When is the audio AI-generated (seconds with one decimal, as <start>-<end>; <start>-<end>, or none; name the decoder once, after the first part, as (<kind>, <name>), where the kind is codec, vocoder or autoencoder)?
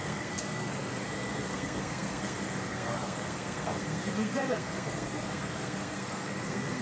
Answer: 0.0-6.8 (codec, SNAC)